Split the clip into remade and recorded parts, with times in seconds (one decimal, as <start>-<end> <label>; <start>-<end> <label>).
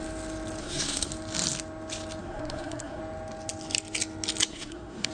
0.0-0.6 recorded; 0.6-1.1 remade; 1.1-2.2 recorded; 2.2-3.0 remade; 3.0-4.5 recorded; 4.5-5.1 remade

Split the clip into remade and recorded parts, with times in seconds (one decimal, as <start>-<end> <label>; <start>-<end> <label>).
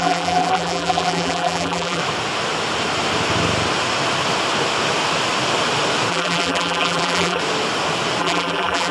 0.0-2.0 remade; 2.0-6.1 recorded; 6.1-7.4 remade; 7.4-8.2 recorded; 8.2-8.9 remade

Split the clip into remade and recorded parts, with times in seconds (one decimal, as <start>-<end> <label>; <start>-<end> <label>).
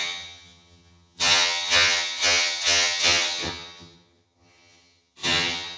0.0-5.8 remade